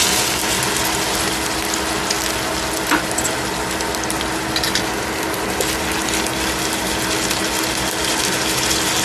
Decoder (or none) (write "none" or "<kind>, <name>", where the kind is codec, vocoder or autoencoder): none